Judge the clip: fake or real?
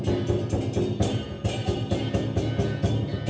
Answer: real